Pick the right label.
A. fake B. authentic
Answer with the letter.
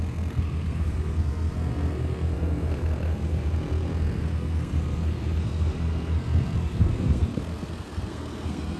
A